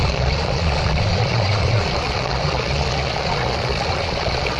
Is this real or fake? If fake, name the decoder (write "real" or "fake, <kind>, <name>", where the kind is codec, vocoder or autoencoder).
fake, vocoder, Vocos